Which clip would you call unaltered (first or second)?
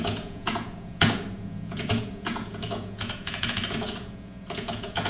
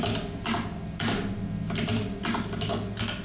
second